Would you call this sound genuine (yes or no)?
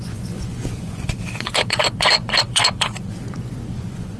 no